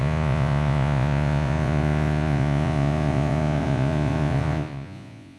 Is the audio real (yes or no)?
no